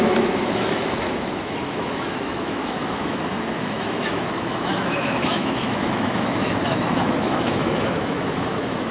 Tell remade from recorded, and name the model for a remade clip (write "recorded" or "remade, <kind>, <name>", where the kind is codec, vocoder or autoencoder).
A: remade, autoencoder, DAC-VAE